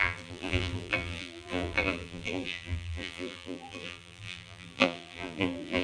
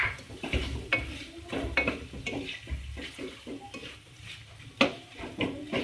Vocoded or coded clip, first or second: first